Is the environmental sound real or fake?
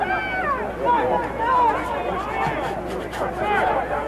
real